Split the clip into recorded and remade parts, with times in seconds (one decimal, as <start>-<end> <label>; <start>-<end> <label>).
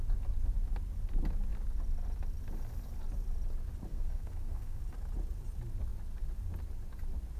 0.0-3.9 recorded; 3.9-4.8 remade; 4.8-7.4 recorded